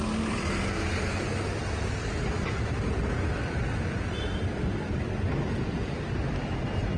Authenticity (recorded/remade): remade